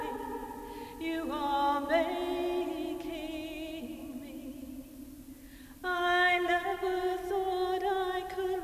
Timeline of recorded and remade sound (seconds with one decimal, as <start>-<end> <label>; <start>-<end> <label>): 0.0-5.8 recorded; 5.8-7.3 remade; 7.3-8.6 recorded